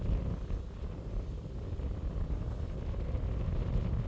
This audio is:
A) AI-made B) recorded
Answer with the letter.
B